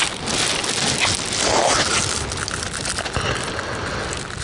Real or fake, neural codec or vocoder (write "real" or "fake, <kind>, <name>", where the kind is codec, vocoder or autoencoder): real